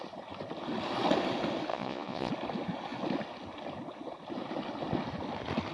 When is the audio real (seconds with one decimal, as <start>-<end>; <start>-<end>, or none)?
0.0-1.7; 2.3-5.7